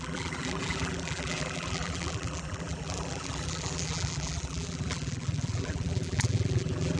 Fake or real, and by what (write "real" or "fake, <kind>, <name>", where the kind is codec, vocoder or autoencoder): fake, vocoder, BigVGAN v2